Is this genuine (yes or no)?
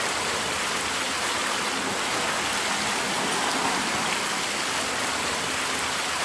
yes